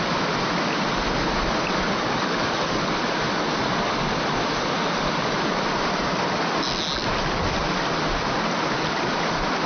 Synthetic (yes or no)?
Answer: no